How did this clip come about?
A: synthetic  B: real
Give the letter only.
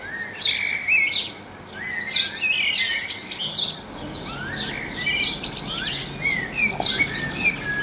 B